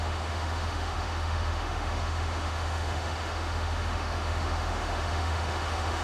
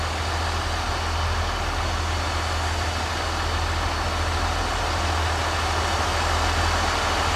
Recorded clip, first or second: second